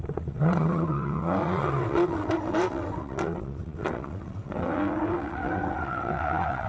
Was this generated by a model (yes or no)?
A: yes